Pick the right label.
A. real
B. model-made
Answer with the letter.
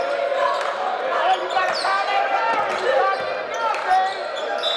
A